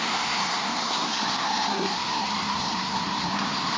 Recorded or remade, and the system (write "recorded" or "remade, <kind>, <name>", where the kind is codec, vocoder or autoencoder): remade, codec, SNAC